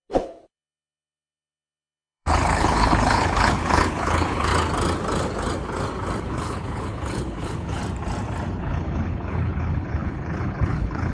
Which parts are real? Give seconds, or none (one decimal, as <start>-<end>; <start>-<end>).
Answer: 4.5-6.2; 7.8-8.6